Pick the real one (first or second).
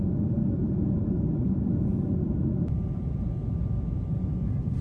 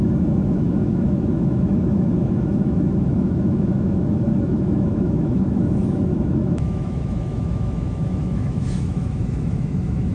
first